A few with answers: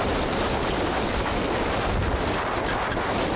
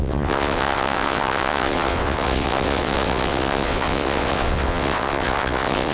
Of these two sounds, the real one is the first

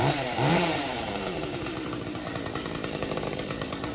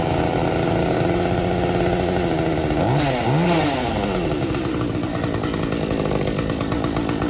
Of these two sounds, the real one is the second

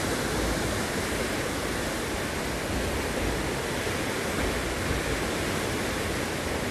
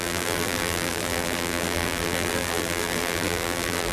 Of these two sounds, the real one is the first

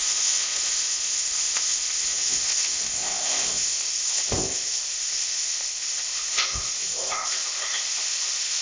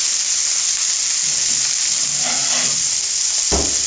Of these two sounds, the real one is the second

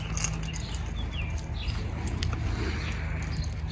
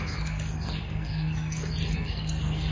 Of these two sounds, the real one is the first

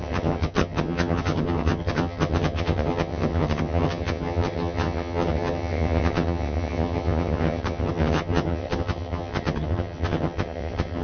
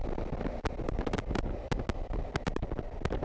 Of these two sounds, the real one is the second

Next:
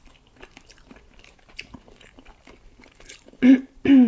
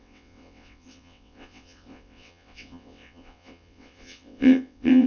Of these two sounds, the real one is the first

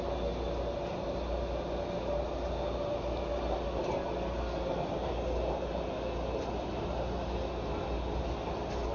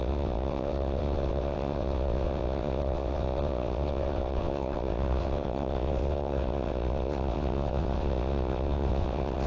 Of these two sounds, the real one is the first